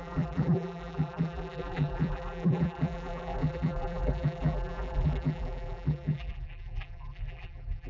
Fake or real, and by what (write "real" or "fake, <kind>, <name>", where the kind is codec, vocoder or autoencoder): fake, vocoder, BigVGAN v2